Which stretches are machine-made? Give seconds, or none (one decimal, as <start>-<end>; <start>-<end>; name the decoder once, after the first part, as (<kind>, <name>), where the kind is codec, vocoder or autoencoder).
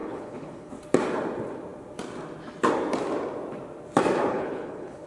0.0-0.7 (codec, HILCodec); 4.3-5.1